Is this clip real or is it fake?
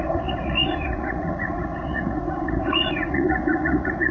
fake